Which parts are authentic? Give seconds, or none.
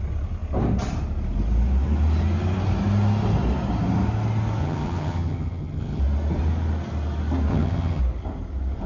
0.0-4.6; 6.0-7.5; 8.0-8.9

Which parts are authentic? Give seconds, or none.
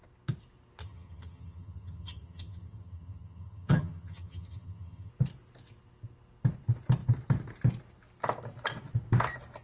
0.0-0.8; 5.1-9.6